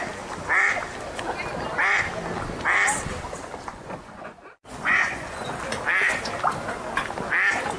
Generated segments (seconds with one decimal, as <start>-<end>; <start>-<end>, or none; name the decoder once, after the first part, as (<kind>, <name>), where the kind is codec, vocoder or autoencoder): 3.7-5.5 (vocoder, Vocos)